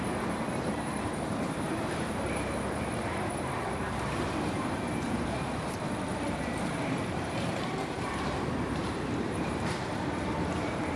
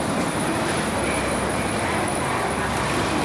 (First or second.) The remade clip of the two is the first